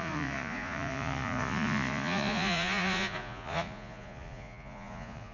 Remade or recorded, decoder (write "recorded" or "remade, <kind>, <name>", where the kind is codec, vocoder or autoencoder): remade, vocoder, Vocos